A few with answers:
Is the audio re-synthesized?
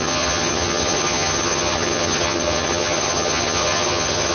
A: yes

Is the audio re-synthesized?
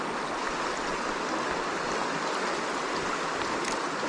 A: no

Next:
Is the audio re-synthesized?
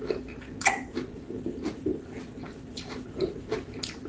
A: no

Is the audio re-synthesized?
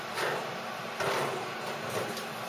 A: no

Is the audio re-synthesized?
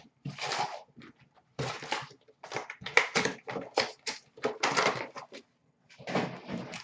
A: no